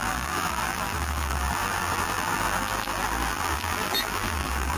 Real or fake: fake